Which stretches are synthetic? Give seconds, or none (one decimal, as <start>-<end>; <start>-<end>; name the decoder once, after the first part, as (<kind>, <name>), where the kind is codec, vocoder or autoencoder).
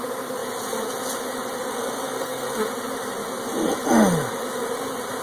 1.7-2.6 (codec, SNAC)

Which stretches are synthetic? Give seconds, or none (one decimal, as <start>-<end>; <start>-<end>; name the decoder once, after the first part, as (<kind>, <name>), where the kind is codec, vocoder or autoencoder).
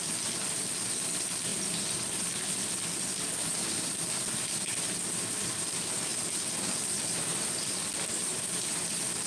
none